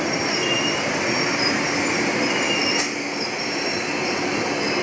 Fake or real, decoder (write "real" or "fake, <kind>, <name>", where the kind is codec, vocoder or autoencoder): real